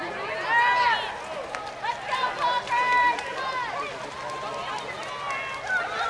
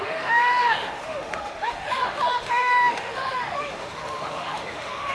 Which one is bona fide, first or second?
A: first